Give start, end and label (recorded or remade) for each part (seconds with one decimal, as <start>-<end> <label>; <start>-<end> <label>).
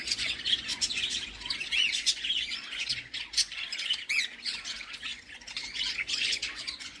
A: 0.0-7.0 remade